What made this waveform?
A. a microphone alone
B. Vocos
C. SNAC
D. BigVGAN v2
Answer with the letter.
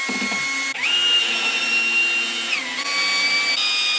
A